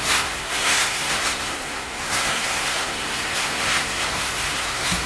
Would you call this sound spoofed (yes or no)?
yes